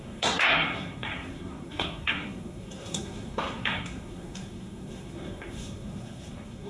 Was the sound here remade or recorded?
remade